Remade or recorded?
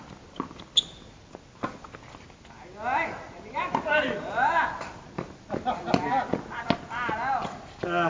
recorded